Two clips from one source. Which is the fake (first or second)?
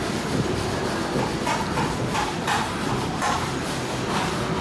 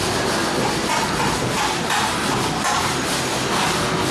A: first